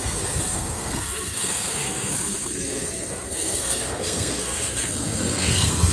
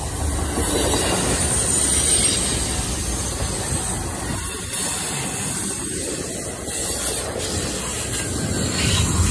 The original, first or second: second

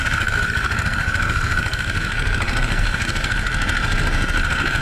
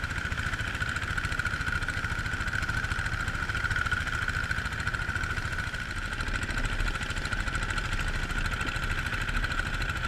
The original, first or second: second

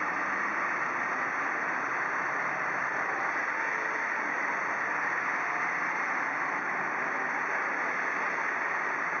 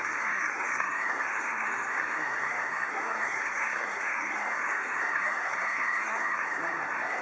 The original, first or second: first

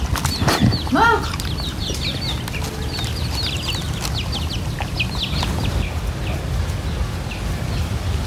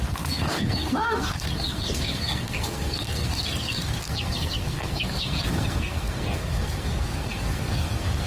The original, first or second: first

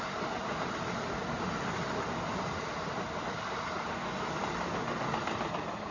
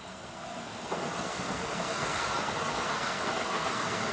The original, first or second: first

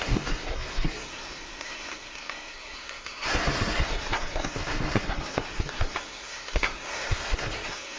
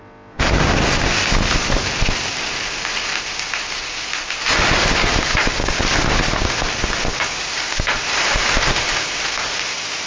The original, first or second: second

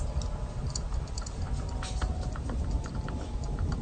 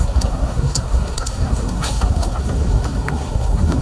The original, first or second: first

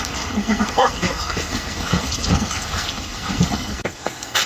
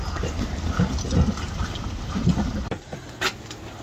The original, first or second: second